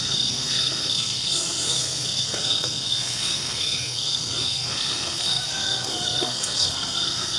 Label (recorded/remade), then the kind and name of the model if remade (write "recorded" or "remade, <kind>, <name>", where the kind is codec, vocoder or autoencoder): remade, codec, SNAC